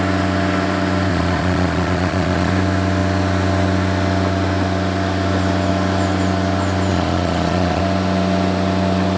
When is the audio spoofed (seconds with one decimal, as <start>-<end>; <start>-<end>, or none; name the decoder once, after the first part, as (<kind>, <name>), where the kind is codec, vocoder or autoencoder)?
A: 1.1-2.5 (vocoder, Vocos); 6.9-7.8